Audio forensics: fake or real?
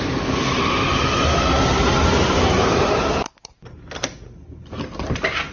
real